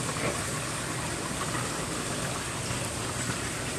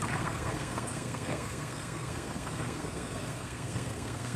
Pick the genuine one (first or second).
first